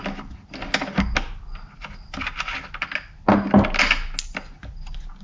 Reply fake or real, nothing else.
real